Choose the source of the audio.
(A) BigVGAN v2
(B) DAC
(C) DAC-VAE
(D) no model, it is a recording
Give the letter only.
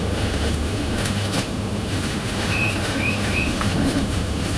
C